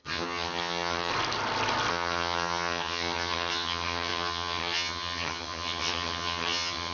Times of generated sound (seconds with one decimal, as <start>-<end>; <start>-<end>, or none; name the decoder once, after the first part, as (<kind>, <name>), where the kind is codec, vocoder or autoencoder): 0.0-1.1 (vocoder, HiFi-GAN); 1.9-6.9